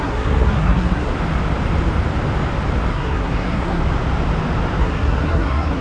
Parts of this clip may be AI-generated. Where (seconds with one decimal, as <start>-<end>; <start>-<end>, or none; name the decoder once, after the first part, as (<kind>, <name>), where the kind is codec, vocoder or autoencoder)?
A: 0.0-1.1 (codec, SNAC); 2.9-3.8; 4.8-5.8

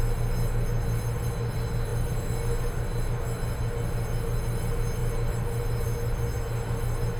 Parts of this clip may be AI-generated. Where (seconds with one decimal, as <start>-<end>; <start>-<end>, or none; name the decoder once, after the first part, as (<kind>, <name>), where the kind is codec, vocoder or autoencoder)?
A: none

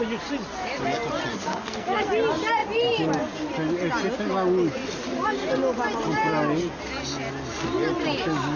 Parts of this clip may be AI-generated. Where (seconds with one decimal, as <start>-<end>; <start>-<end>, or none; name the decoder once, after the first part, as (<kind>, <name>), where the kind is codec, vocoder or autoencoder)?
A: 1.3-2.1 (codec, SNAC)